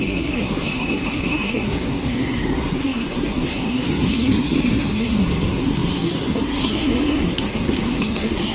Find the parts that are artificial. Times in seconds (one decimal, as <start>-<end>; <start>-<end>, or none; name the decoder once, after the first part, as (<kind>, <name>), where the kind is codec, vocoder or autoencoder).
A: 0.0-8.5 (codec, SNAC)